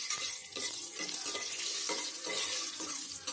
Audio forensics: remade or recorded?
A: remade